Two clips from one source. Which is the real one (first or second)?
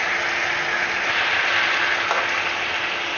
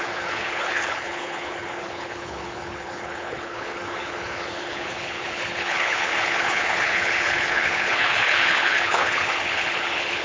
first